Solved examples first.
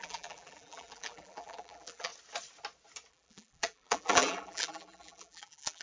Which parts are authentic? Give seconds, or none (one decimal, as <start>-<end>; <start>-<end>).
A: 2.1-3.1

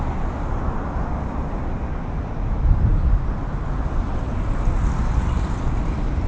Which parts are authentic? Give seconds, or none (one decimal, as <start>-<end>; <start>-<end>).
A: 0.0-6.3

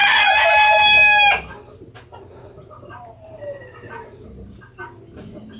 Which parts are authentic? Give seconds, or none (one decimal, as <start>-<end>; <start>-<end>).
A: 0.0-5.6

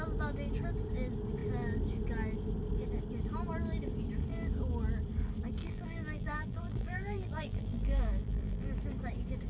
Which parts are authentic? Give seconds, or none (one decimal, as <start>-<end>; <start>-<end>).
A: 0.0-5.6; 8.7-9.5

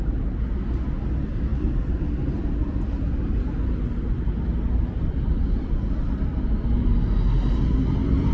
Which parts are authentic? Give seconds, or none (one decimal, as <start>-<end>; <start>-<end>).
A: 0.0-1.5; 2.0-4.5; 6.9-8.3